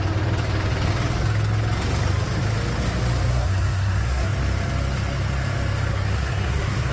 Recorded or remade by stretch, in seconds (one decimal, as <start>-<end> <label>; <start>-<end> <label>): 0.0-3.3 recorded; 3.3-4.3 remade; 4.3-5.9 recorded; 5.9-6.9 remade